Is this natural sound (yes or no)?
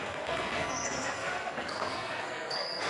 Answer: no